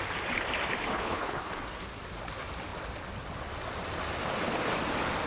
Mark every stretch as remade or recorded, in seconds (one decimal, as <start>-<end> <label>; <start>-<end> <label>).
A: 0.0-0.9 recorded; 0.9-1.5 remade; 1.5-5.3 recorded